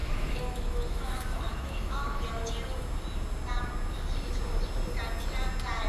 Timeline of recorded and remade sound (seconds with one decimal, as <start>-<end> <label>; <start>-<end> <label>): 0.0-2.2 remade; 2.2-5.9 recorded